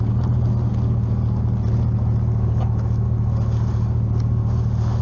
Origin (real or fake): real